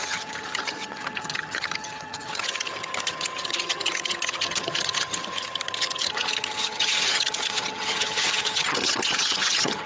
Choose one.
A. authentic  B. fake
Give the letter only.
B